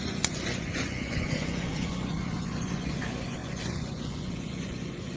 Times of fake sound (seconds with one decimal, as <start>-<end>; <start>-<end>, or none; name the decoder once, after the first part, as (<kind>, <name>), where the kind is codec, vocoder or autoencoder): 0.0-5.2 (vocoder, Vocos)